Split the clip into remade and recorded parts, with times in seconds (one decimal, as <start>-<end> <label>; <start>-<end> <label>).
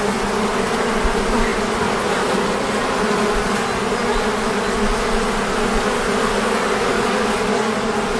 0.0-6.9 recorded; 6.9-7.6 remade; 7.6-8.2 recorded